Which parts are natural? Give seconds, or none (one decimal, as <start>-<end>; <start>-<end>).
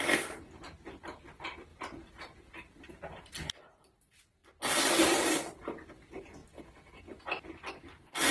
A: 0.0-8.3